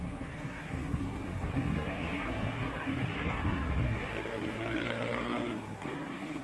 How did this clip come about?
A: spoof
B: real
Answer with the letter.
A